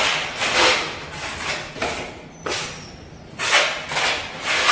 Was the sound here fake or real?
real